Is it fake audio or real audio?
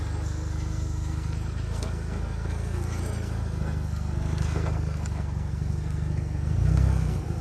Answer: fake